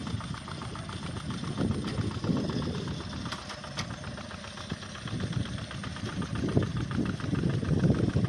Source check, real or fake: real